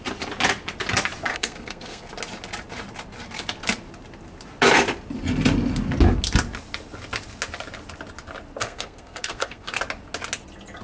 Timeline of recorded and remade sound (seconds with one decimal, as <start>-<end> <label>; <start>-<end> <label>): 0.0-1.3 recorded; 1.3-2.1 remade; 2.1-8.6 recorded; 8.6-9.8 remade; 9.8-10.8 recorded